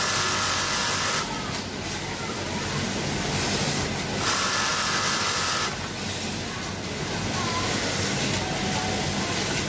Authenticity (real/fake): real